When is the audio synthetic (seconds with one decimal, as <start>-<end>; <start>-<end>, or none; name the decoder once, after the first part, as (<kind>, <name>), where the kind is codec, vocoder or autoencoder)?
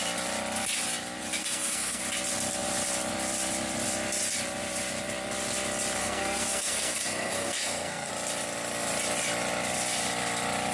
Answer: 1.4-2.0 (codec, SNAC); 6.0-8.1